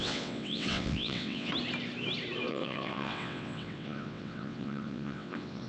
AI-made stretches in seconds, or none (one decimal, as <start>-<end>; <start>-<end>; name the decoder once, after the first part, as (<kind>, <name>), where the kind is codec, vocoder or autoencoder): 0.0-1.5 (vocoder, WaveNeXt); 2.5-5.7